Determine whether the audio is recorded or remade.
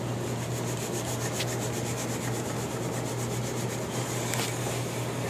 recorded